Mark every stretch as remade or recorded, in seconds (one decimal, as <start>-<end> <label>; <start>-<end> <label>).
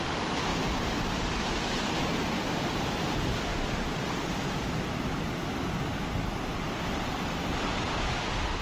0.0-0.5 recorded; 0.5-2.0 remade; 2.0-3.5 recorded; 3.5-7.5 remade; 7.5-8.6 recorded